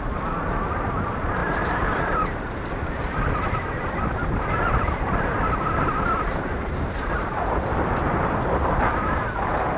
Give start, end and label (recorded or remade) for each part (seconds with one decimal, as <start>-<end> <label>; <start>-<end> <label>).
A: 0.0-9.8 remade